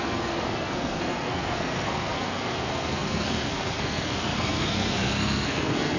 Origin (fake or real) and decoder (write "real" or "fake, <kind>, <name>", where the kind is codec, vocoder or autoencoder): fake, codec, SNAC